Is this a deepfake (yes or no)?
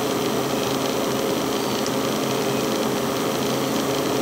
no